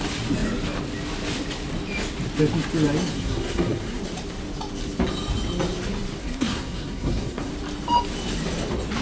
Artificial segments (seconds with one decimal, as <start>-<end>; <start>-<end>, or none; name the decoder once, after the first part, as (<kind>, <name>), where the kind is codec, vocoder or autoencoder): 3.1-4.0 (codec, SNAC); 6.2-7.5